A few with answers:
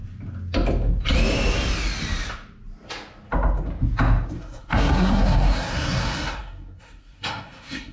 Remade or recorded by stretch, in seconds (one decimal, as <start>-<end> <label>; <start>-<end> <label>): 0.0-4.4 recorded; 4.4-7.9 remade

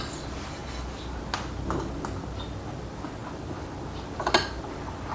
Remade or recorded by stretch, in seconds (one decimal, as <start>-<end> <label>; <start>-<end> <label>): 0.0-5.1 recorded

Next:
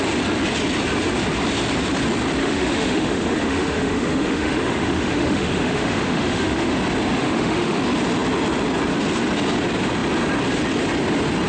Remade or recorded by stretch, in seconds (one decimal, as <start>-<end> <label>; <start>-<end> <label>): 0.0-2.4 recorded; 2.4-6.7 remade; 6.7-7.2 recorded; 7.2-7.8 remade; 7.8-11.5 recorded

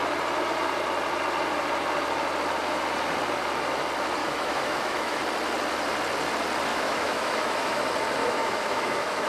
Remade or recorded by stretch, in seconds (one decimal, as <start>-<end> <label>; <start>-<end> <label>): 0.0-4.2 recorded; 4.2-5.2 remade; 5.2-6.7 recorded; 6.7-7.8 remade; 7.8-8.2 recorded; 8.2-9.3 remade

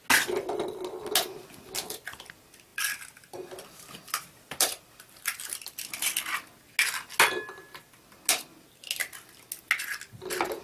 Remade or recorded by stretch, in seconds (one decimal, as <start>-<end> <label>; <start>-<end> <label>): 0.0-2.7 recorded; 2.7-5.9 remade; 5.9-10.6 recorded

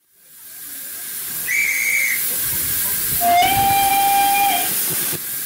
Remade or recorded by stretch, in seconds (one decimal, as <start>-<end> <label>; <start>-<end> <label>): 0.0-5.5 recorded

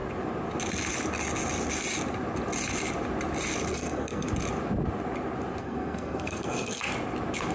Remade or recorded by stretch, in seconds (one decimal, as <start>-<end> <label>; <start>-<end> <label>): 0.0-3.7 recorded; 3.7-4.3 remade; 4.3-5.6 recorded; 5.6-6.9 remade; 6.9-7.5 recorded

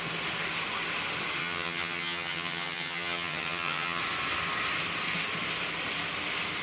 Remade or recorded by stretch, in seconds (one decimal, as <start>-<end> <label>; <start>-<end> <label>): 0.0-1.4 recorded; 1.4-4.0 remade; 4.0-6.6 recorded